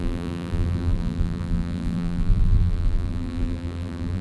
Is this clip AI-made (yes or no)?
yes